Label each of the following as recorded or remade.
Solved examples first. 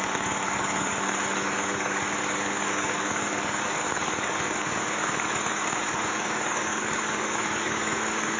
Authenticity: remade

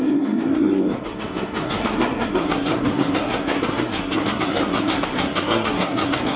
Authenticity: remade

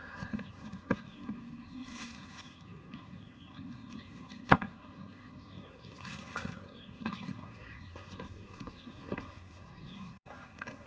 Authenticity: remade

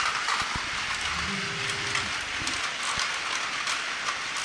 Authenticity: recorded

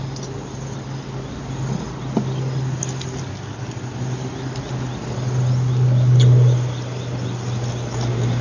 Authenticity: recorded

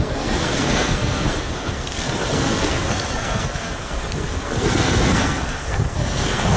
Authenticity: remade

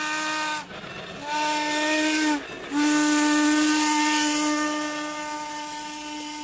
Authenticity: recorded